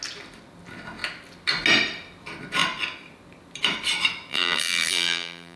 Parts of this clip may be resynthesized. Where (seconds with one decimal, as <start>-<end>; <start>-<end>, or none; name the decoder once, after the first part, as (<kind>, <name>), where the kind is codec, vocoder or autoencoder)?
4.3-5.6 (vocoder, BigVGAN v2)